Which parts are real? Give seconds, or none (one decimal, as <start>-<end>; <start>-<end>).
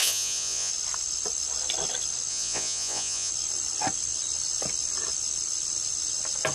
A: 0.7-2.3; 3.3-6.5